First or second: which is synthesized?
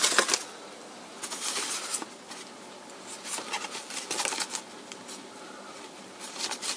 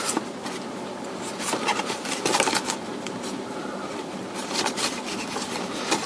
second